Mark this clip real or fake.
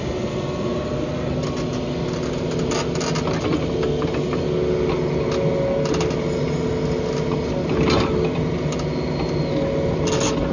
real